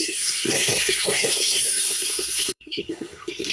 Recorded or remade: remade